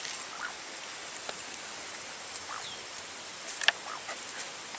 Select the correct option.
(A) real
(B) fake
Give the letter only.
A